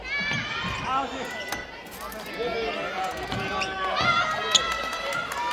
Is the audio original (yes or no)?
yes